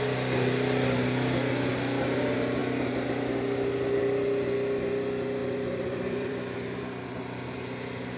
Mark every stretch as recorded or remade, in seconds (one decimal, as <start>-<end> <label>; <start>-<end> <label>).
0.0-5.4 recorded; 5.4-6.8 remade; 6.8-8.2 recorded